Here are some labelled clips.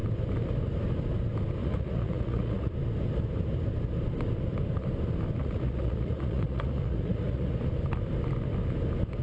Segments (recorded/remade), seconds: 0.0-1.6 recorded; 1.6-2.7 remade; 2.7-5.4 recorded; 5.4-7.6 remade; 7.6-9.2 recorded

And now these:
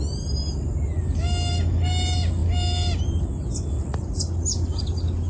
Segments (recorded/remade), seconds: 0.0-5.3 recorded

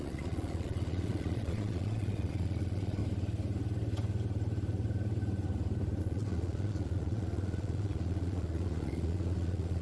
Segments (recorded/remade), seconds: 0.0-3.0 remade; 3.0-6.0 recorded; 6.0-9.8 remade

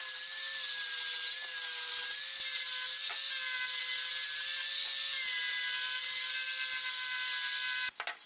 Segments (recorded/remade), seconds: 0.0-8.3 recorded

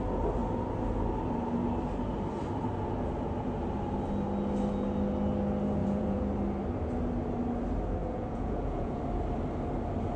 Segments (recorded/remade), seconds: 0.0-5.8 recorded; 5.8-6.3 remade; 6.3-8.0 recorded; 8.0-9.0 remade; 9.0-10.2 recorded